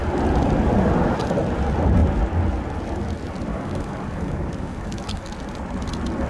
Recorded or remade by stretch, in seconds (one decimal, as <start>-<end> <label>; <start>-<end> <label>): 0.0-3.5 recorded; 3.5-5.3 remade; 5.3-6.3 recorded